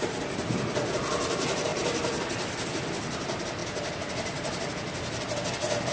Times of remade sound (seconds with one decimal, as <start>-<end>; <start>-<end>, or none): none